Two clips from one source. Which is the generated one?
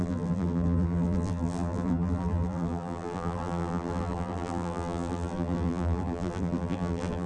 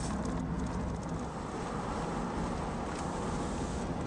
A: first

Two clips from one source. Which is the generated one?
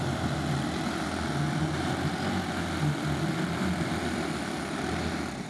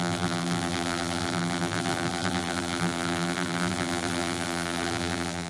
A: second